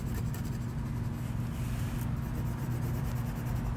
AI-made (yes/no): no